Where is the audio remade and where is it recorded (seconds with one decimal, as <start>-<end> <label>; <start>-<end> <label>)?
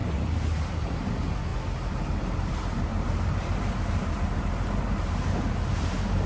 0.0-1.1 remade; 1.1-2.9 recorded; 2.9-4.6 remade; 4.6-6.3 recorded